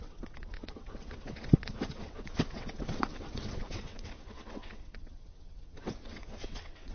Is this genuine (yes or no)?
no